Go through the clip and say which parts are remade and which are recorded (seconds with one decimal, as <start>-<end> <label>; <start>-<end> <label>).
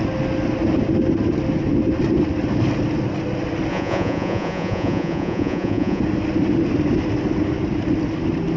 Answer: 0.0-3.7 recorded; 3.7-6.0 remade; 6.0-8.6 recorded